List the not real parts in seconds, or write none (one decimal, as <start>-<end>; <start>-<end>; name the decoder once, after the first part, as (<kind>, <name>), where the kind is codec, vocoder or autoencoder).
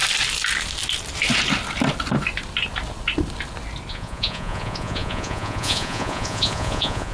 3.9-7.1 (vocoder, Vocos)